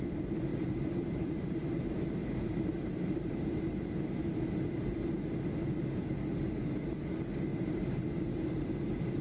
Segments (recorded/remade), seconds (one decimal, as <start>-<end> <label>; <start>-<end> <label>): 0.0-0.5 recorded; 0.5-1.3 remade; 1.3-2.2 recorded; 2.2-3.6 remade; 3.6-7.5 recorded; 7.5-8.1 remade; 8.1-9.2 recorded